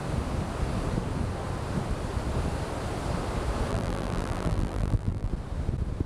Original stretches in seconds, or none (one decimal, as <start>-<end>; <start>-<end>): 0.0-3.7; 5.3-6.1